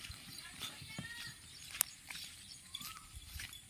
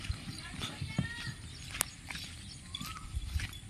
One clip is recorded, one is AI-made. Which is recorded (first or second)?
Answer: second